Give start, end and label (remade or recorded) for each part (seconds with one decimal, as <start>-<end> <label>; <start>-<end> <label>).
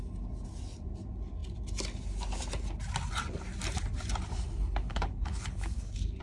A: 0.0-4.9 recorded; 4.9-6.2 remade